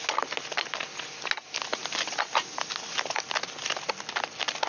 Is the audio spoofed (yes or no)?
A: no